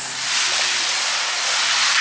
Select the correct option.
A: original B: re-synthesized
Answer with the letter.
A